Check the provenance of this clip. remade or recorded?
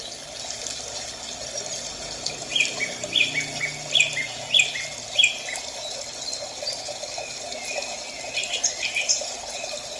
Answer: recorded